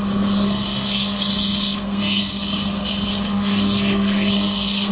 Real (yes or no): no